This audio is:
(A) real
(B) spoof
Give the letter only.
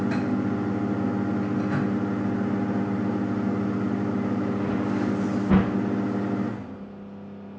A